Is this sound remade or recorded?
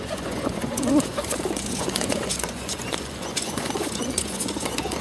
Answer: remade